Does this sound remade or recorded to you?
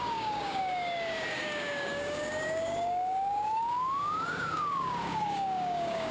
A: remade